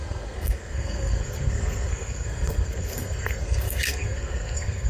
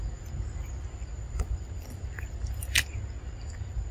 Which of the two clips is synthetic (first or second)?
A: first